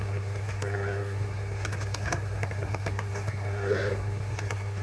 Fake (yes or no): yes